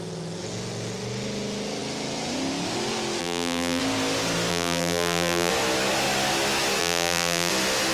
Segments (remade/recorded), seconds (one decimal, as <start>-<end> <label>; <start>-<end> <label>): 0.0-3.2 recorded; 3.2-3.8 remade; 3.8-4.5 recorded; 4.5-5.5 remade; 5.5-6.8 recorded; 6.8-7.5 remade; 7.5-7.9 recorded